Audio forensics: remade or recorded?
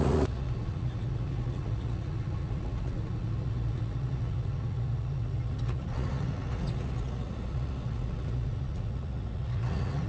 remade